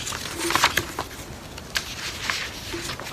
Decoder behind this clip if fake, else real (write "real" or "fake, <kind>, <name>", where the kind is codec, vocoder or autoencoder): real